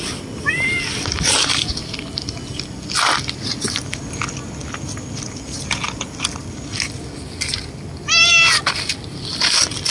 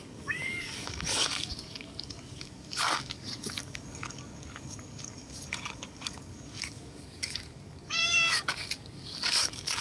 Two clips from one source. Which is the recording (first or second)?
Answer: first